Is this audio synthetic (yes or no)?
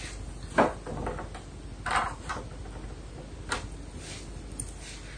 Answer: no